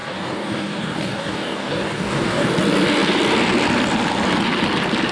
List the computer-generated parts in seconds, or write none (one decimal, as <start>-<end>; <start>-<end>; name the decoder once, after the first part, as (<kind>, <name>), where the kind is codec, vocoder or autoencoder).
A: 0.0-2.5 (codec, DAC)

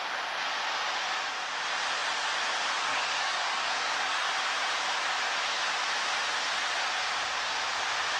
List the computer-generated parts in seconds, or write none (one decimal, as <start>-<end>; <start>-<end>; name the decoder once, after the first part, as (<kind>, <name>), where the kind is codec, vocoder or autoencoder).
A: 2.9-4.3 (codec, DAC)